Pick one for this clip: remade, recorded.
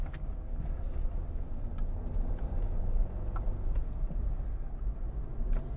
recorded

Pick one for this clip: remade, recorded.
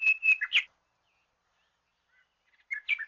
recorded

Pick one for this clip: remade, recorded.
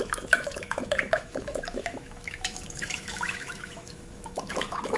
remade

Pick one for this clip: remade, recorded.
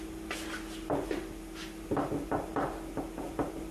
recorded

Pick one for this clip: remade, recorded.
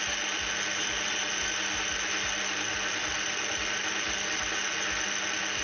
recorded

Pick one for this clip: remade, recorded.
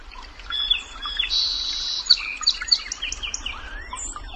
remade